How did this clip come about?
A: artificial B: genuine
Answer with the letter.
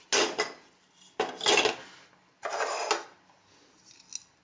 B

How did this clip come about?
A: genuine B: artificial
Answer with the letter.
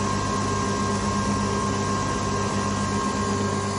A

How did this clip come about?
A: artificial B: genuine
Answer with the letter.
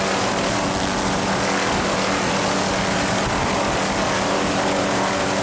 B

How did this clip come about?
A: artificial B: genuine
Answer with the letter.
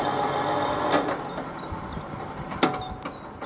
B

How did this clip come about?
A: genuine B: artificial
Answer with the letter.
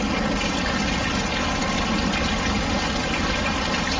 A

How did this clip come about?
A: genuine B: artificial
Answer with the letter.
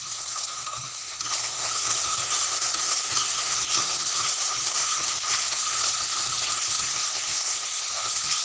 B